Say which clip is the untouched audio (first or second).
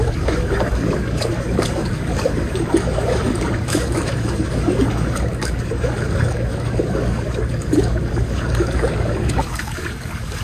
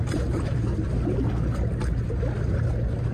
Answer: second